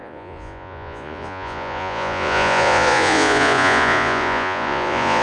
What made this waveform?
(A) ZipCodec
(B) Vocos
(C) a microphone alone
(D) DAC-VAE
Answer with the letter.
B